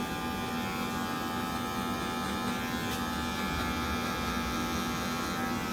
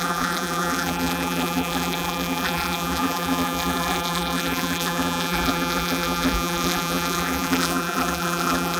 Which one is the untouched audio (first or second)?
first